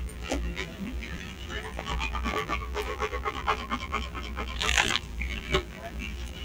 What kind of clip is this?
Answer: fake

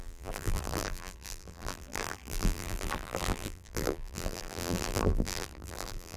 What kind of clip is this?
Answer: fake